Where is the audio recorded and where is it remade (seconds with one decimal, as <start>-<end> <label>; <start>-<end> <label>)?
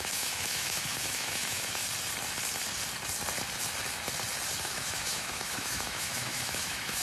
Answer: 0.0-1.8 remade; 1.8-4.6 recorded; 4.6-7.0 remade